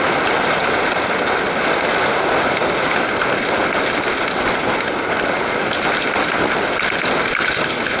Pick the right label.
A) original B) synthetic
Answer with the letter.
A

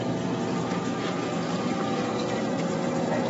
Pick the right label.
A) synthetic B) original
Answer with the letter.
B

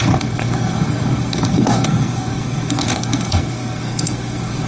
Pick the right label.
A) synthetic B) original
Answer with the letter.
A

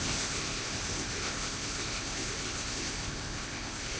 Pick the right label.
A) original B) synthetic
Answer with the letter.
B